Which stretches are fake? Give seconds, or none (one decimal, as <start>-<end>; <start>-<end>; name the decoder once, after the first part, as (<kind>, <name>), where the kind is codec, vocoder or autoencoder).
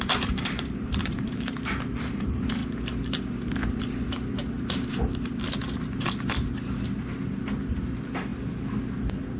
0.0-2.6 (vocoder, BigVGAN v2); 7.7-8.3